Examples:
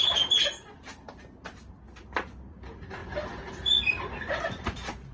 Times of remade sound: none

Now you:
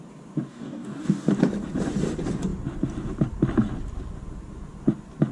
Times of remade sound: 0.5-1.3 (codec, DAC)

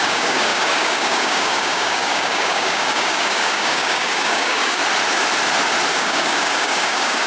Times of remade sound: 0.0-4.8 (codec, DAC); 5.9-7.3

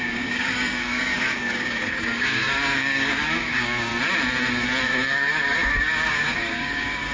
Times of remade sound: 0.0-3.9 (codec, DAC); 4.9-7.1